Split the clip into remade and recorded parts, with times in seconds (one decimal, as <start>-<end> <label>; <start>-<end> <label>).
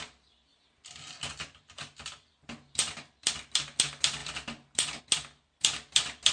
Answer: 0.0-6.3 recorded